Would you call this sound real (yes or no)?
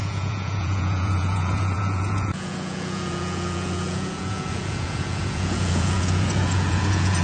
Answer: no